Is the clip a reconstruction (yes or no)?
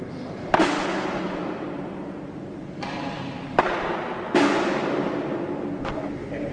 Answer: yes